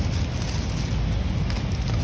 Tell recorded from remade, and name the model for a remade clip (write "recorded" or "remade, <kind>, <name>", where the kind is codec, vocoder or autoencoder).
recorded